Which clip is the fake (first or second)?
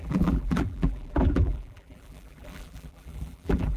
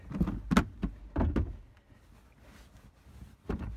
first